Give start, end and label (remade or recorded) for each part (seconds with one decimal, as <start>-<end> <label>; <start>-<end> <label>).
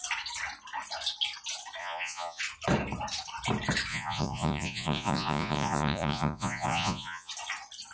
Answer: 0.0-1.8 recorded; 1.8-2.4 remade; 2.4-3.9 recorded; 3.9-7.3 remade; 7.3-7.9 recorded